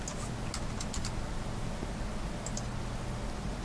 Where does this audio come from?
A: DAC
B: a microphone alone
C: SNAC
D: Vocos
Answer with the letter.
B